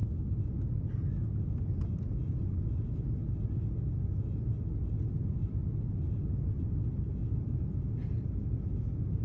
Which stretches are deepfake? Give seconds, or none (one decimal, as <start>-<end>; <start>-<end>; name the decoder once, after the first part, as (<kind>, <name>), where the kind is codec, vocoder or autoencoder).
none